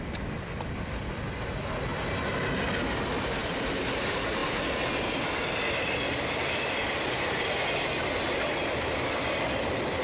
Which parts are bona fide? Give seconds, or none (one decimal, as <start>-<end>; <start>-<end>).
0.0-10.0